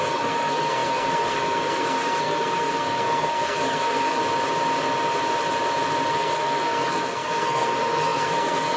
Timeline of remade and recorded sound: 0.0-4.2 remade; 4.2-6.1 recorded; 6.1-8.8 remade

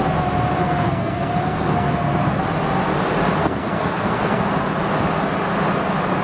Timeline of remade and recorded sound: 0.0-0.6 recorded; 0.6-2.4 remade; 2.4-3.4 recorded; 3.4-4.5 remade; 4.5-6.2 recorded

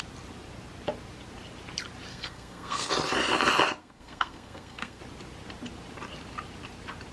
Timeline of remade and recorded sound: 0.0-2.1 recorded; 2.1-2.9 remade; 2.9-3.8 recorded; 3.8-5.0 remade; 5.0-7.1 recorded